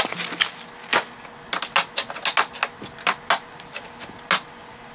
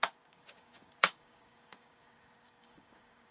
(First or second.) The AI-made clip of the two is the second